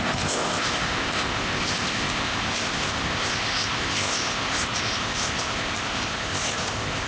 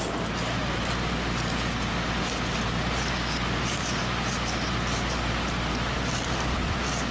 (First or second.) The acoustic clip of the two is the second